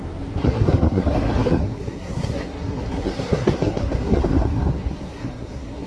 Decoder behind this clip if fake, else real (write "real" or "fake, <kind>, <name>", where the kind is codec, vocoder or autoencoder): fake, codec, SNAC